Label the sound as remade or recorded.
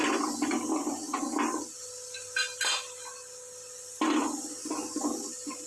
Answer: recorded